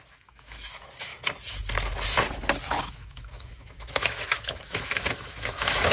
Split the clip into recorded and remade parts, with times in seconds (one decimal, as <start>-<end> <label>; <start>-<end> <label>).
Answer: 0.0-1.1 remade; 1.1-2.8 recorded; 2.8-5.9 remade